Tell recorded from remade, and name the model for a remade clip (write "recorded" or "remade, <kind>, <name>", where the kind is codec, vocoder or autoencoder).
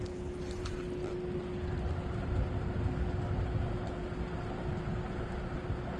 recorded